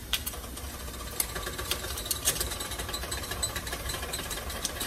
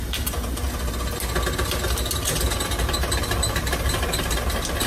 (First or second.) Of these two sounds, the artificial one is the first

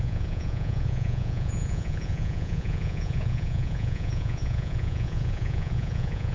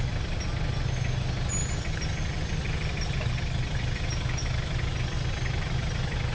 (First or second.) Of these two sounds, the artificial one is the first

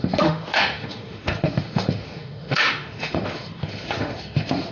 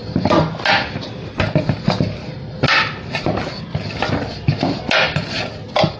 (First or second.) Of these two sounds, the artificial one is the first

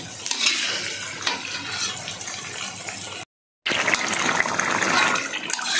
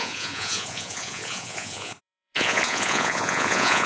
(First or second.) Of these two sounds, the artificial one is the second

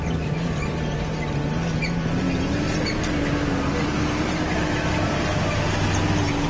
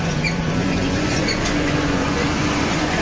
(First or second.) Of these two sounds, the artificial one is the second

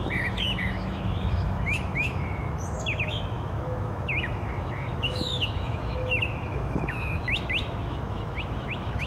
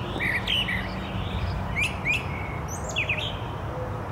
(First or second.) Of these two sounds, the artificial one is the first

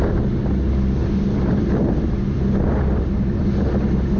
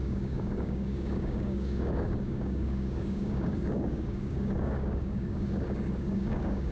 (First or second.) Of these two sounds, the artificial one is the second